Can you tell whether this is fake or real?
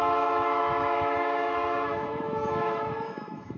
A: fake